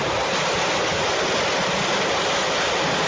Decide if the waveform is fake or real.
real